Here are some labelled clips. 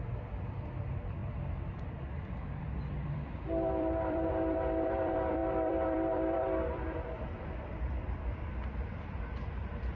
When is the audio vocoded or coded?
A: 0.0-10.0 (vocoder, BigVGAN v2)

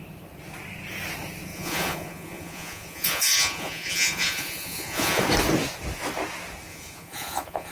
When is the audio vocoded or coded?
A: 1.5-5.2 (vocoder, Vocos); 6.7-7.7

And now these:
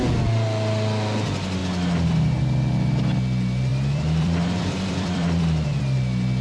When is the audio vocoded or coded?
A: 3.7-5.8 (vocoder, BigVGAN v2)

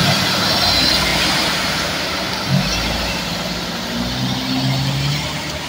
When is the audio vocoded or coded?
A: 0.0-0.5 (vocoder, BigVGAN v2); 1.1-3.2

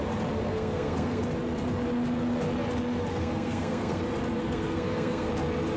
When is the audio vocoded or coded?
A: 0.5-1.2 (codec, SNAC); 3.1-4.0; 4.4-5.3

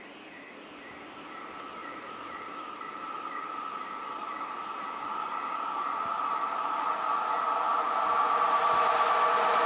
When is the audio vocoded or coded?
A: 1.8-2.3 (vocoder, Vocos)

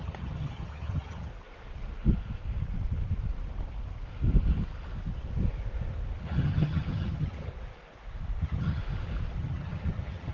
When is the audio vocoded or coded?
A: 0.0-1.3 (vocoder, HiFi-GAN); 6.2-7.5; 8.4-8.8; 9.4-10.3

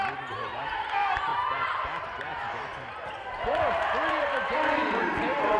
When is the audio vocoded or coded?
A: 0.0-1.3 (vocoder, BigVGAN v2); 2.0-2.7; 3.5-5.6